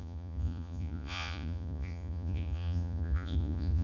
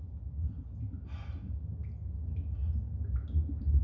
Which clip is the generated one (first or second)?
first